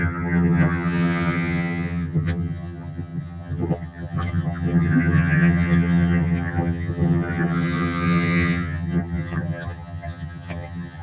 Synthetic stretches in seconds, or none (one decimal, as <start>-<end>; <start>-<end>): 0.0-11.0